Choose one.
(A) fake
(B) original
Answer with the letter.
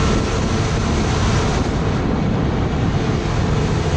B